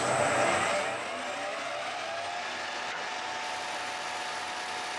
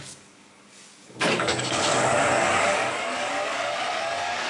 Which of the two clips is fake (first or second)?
second